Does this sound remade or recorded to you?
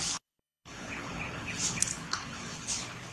remade